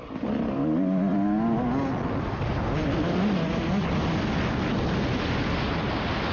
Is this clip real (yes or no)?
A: yes